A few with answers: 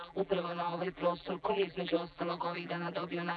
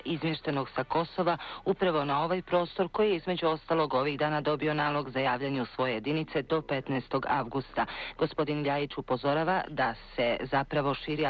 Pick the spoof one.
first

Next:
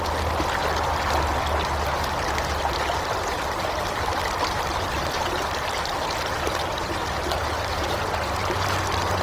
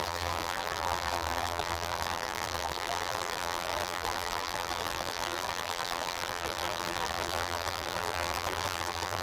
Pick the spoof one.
second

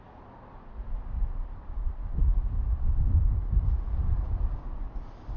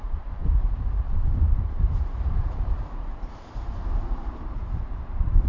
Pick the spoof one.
second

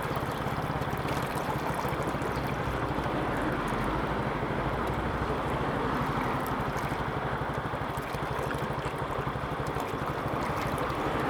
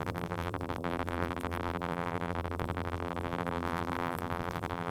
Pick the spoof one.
second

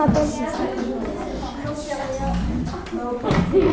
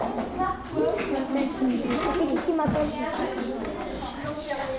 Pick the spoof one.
second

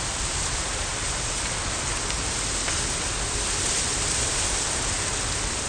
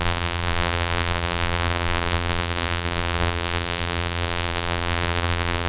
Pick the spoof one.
second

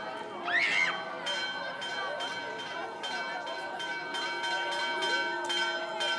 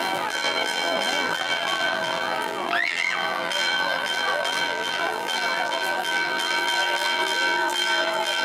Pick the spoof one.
second